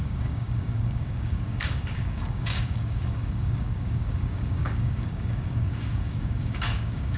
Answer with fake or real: fake